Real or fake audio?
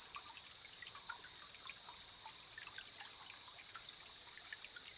real